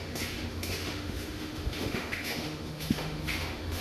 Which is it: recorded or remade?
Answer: remade